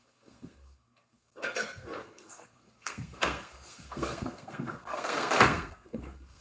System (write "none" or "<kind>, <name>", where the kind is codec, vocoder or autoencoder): codec, SNAC